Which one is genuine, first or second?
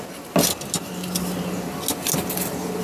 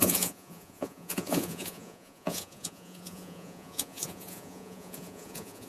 first